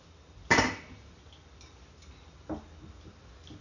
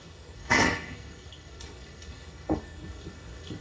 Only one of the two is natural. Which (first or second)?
first